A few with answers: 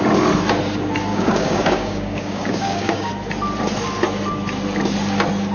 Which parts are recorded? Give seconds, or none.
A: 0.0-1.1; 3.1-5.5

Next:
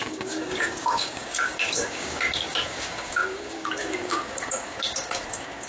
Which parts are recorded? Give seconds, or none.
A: none

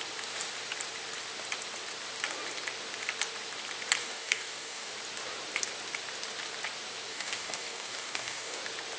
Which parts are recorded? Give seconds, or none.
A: 0.0-4.0; 4.9-7.1; 8.6-9.0

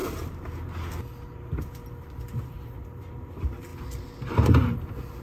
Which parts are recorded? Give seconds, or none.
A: 0.0-5.2

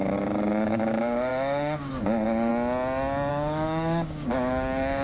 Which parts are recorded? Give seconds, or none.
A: 2.5-3.3

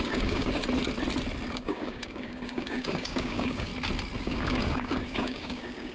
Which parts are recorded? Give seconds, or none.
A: 0.6-1.5; 3.7-4.2

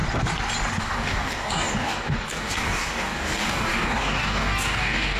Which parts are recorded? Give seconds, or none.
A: 0.0-0.8